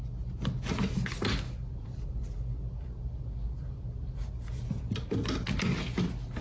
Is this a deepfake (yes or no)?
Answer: no